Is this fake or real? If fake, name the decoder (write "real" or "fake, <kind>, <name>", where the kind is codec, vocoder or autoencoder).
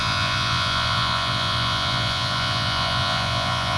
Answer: fake, vocoder, Vocos